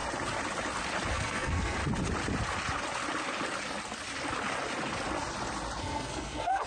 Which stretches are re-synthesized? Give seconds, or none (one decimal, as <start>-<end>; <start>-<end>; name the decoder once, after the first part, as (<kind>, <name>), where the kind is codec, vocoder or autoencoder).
1.1-1.8 (codec, SNAC); 5.8-6.7